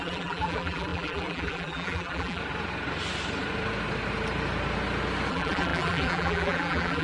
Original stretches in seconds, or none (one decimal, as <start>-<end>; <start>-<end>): 2.4-5.3